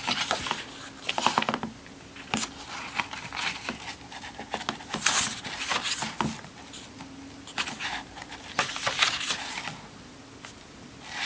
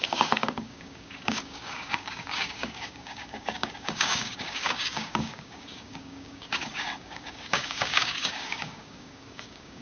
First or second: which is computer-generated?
second